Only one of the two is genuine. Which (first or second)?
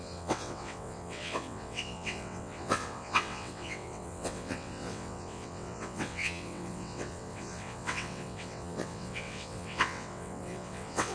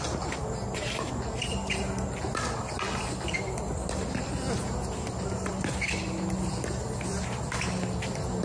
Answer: second